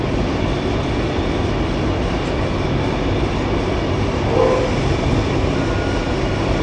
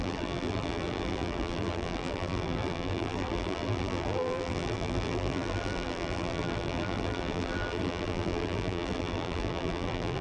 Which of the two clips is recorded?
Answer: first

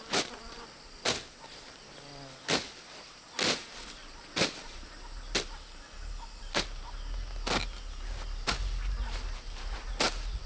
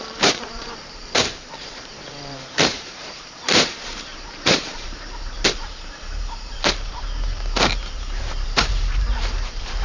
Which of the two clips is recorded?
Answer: first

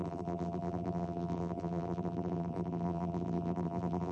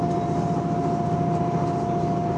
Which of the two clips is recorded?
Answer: second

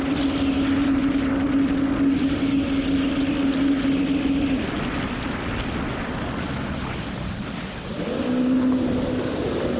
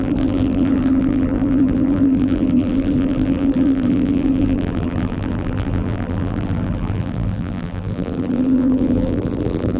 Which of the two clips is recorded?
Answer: first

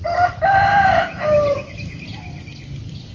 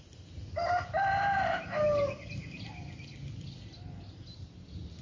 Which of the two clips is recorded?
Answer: second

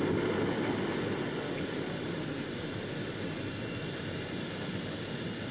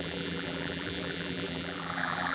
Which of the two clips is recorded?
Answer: first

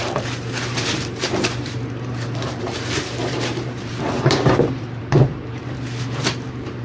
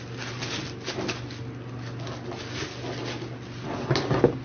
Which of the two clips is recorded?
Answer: second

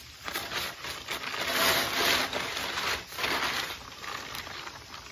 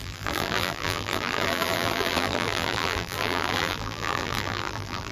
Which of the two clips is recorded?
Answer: first